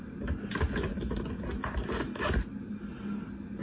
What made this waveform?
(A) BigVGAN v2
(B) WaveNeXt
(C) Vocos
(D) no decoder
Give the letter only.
D